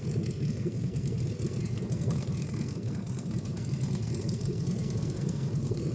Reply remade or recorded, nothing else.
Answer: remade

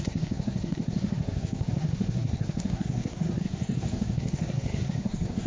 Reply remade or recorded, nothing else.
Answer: remade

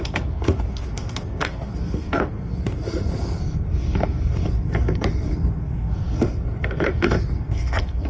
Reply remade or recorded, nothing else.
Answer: remade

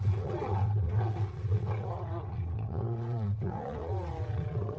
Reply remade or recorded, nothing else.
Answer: remade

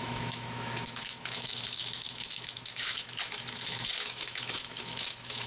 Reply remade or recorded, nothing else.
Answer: remade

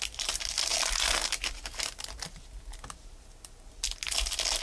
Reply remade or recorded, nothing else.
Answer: recorded